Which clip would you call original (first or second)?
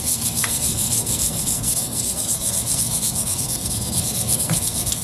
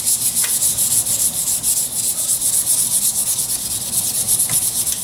second